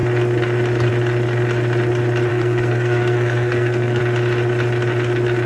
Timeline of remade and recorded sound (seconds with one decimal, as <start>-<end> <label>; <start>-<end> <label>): 0.0-2.3 recorded; 2.3-4.0 remade; 4.0-5.5 recorded